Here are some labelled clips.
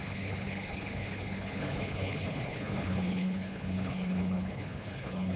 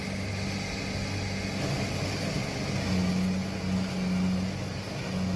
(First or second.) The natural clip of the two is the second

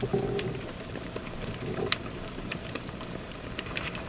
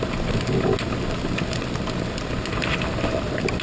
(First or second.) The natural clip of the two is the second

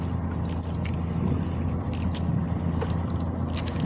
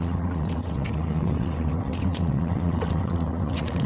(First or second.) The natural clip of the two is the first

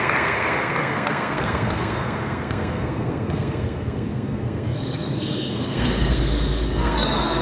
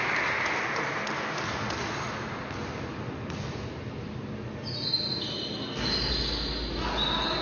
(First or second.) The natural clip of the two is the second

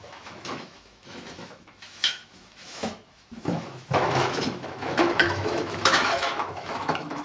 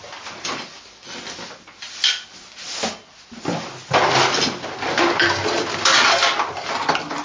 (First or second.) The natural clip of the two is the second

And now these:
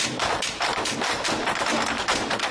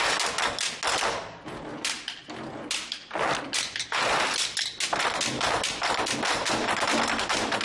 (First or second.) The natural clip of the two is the second